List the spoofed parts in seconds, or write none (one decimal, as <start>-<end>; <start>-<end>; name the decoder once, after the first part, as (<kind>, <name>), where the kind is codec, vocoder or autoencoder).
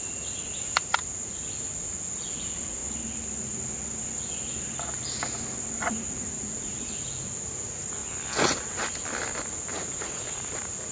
0.0-2.8 (vocoder, Vocos); 6.1-8.0; 9.7-10.9